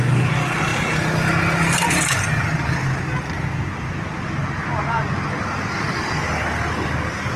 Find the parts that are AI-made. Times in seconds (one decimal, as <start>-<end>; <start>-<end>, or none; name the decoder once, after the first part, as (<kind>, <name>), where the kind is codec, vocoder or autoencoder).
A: none